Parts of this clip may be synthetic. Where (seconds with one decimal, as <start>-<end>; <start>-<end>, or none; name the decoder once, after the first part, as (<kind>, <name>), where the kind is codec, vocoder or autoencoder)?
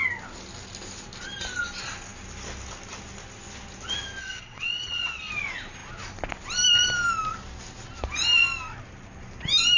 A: 4.2-5.3 (vocoder, WaveNeXt)